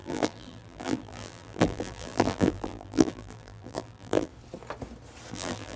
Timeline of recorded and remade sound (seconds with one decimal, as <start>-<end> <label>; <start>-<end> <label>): 0.0-4.3 remade; 4.3-5.3 recorded; 5.3-5.8 remade